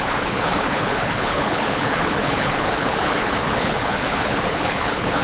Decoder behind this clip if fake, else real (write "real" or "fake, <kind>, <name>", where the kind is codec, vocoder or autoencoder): fake, codec, HILCodec